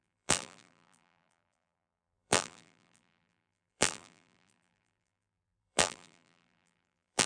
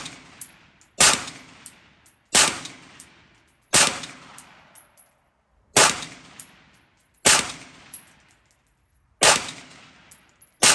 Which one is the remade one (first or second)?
first